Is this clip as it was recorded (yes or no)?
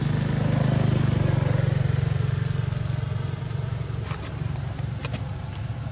yes